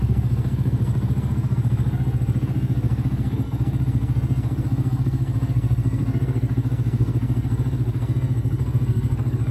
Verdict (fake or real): fake